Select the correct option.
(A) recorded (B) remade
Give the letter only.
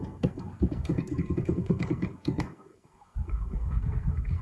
B